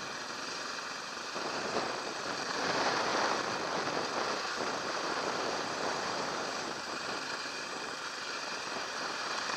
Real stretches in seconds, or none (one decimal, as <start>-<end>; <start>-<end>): 3.1-4.6